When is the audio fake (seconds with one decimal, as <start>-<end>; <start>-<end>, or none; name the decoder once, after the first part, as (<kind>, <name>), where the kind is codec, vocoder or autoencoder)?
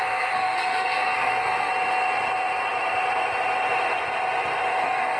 0.0-1.7 (codec, SNAC); 4.8-5.2